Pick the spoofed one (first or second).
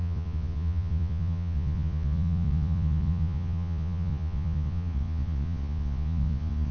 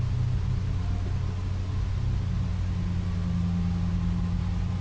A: first